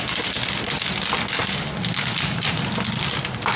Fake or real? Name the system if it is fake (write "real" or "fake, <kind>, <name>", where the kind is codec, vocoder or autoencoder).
real